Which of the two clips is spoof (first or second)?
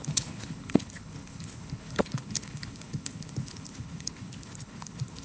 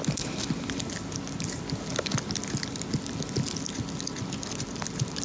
first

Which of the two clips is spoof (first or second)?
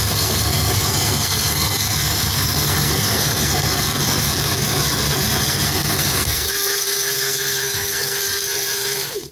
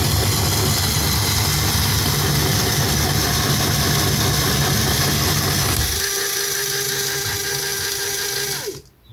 first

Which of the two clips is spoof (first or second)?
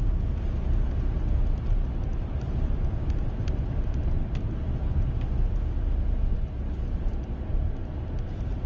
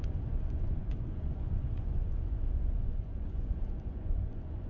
second